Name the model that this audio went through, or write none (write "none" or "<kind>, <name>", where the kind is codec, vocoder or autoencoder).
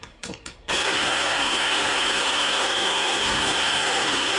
codec, SNAC